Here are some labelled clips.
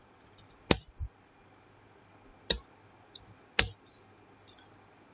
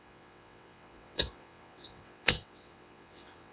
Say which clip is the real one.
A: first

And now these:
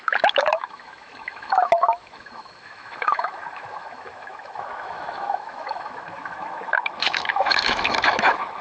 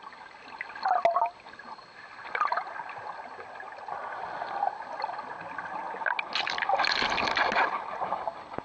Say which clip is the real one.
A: second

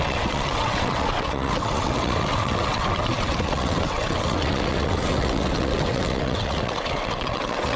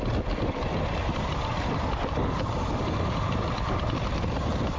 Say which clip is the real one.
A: second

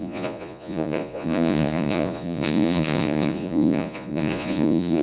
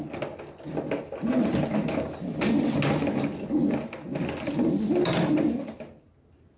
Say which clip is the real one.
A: second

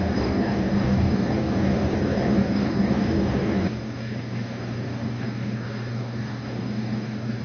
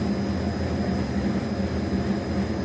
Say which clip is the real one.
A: second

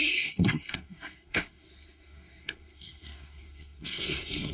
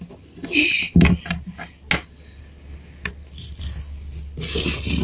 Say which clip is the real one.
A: second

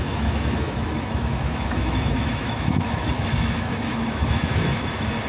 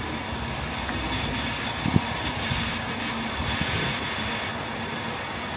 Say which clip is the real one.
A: second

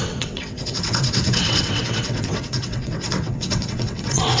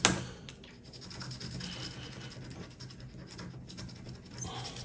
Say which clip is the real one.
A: second